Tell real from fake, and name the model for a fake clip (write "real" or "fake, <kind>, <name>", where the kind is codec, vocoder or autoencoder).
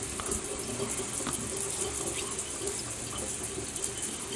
real